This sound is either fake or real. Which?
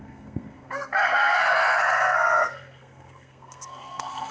fake